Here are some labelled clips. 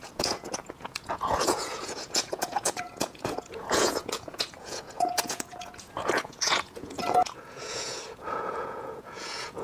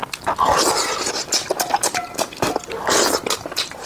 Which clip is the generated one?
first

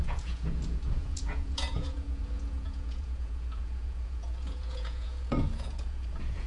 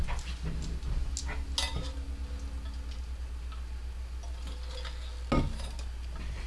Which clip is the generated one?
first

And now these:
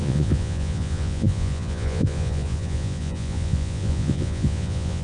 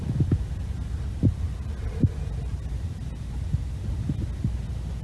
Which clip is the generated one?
first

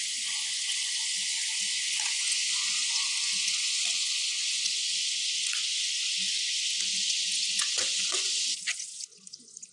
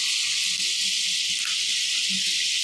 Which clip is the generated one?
first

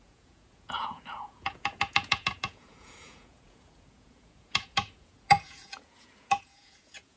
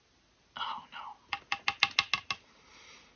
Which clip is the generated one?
first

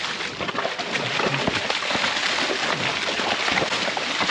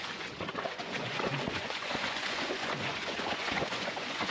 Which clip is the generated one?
second